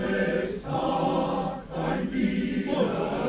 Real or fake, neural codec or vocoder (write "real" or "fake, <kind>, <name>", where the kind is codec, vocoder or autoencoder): fake, vocoder, Vocos